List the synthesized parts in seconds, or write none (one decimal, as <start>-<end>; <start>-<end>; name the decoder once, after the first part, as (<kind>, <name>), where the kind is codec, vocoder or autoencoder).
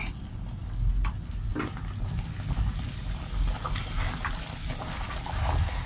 none